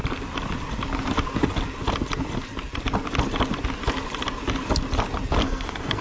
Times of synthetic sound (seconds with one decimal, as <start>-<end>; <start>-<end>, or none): 5.4-6.0